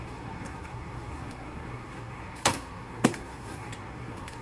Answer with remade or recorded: remade